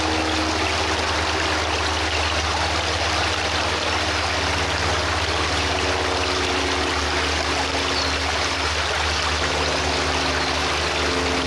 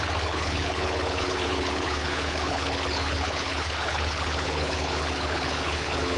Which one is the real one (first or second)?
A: first